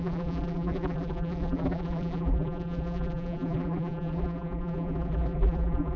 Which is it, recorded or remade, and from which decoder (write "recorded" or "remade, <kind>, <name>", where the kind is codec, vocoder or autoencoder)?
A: remade, vocoder, BigVGAN v2